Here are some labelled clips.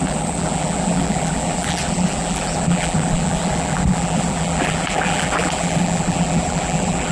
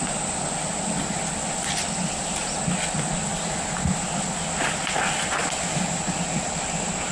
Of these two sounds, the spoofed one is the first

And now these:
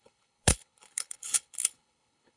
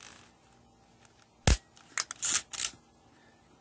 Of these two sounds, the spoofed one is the first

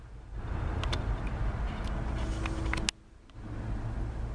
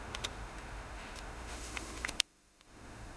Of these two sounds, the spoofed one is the second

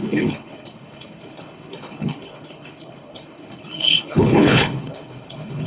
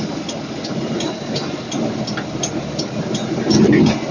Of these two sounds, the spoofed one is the first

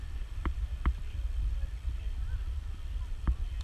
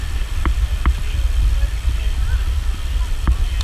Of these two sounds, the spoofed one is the first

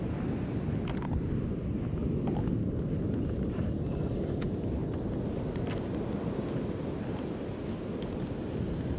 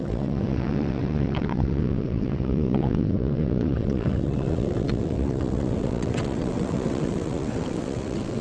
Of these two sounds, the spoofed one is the second